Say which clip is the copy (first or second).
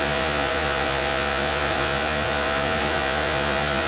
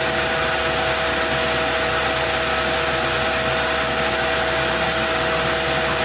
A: first